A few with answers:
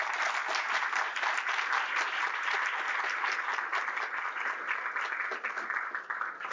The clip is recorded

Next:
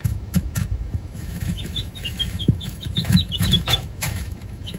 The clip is remade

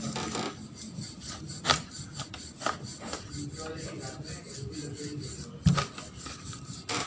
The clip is recorded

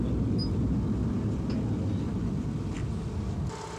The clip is recorded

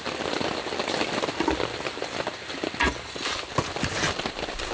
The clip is recorded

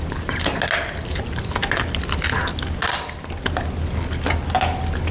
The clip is recorded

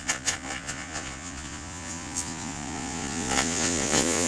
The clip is remade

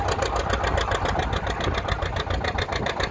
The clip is recorded